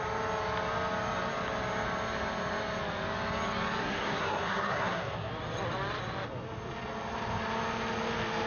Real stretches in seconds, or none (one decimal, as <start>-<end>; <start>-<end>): 0.0-3.8; 5.3-8.5